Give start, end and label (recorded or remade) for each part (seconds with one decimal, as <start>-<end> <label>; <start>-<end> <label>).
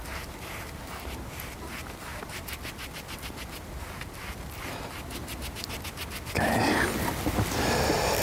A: 0.0-8.2 recorded